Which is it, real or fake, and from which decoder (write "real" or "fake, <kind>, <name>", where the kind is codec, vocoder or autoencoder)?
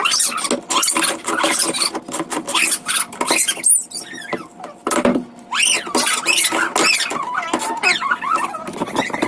real